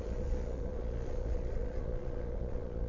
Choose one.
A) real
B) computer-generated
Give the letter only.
B